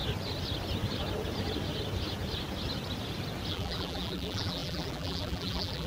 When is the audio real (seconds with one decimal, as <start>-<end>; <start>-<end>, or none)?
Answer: 0.0-3.5